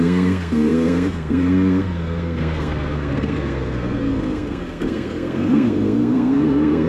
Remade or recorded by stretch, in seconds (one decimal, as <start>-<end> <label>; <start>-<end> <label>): 0.0-6.9 remade